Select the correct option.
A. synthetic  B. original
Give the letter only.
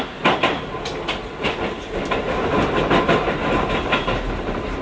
B